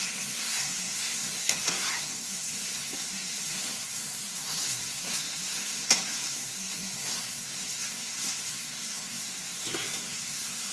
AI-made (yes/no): yes